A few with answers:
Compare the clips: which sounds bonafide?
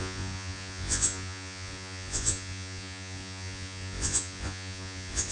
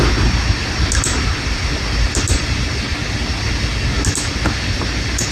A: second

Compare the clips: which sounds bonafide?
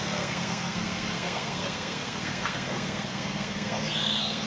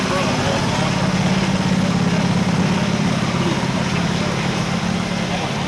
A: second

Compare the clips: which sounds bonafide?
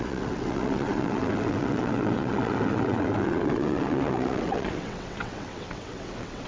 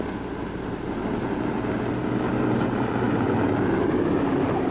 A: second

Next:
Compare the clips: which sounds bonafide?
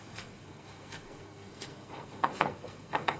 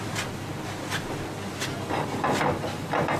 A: second